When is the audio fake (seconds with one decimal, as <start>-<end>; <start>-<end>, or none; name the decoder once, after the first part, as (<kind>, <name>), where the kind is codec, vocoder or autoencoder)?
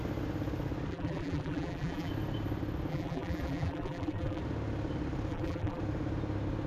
0.9-2.1 (vocoder, BigVGAN v2); 2.9-4.4; 5.3-5.8